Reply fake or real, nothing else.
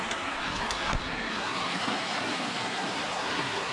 fake